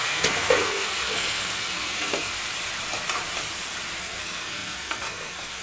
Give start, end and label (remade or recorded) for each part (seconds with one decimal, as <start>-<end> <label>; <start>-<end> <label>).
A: 0.0-2.3 remade; 2.3-4.0 recorded; 4.0-5.6 remade